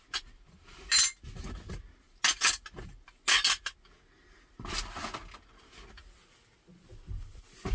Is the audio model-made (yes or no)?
no